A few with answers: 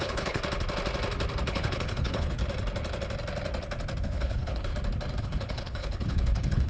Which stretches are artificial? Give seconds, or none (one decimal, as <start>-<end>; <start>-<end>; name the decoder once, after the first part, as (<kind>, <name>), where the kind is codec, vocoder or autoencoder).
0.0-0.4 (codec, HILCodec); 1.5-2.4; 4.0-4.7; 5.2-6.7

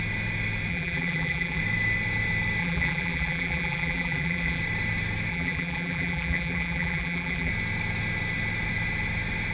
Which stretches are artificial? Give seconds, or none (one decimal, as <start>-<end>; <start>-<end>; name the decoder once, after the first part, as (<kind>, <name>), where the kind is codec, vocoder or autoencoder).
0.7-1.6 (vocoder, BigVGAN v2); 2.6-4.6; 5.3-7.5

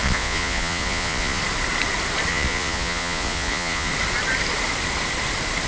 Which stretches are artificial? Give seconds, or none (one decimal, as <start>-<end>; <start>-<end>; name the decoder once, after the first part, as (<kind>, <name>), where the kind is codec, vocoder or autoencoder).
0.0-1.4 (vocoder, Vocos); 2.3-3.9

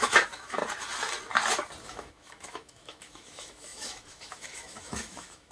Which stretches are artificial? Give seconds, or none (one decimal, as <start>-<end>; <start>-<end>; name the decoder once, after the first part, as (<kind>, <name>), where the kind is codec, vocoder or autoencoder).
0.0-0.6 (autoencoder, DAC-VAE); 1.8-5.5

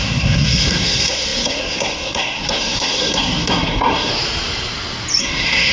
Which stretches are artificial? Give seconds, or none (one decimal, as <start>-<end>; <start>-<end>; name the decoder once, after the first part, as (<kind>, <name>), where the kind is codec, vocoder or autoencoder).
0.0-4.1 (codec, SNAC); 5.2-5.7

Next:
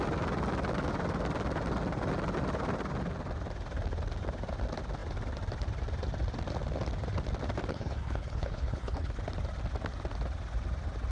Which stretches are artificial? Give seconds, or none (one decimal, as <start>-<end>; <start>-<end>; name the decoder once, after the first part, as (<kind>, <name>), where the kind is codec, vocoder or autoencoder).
7.7-9.2 (codec, HILCodec)

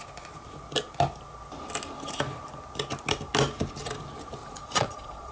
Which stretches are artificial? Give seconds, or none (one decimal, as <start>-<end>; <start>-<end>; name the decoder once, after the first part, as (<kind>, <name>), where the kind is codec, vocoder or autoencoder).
4.4-5.3 (vocoder, Vocos)